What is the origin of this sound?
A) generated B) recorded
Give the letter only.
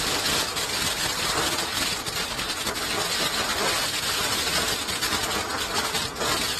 B